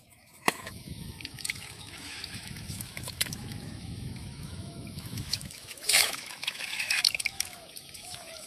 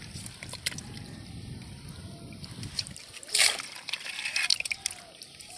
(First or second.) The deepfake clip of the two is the first